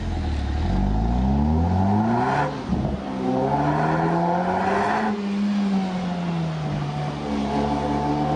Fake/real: real